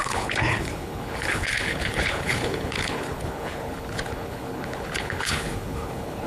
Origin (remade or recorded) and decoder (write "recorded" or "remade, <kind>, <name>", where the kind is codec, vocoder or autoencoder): remade, codec, HILCodec